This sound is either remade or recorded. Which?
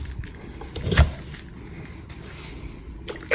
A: recorded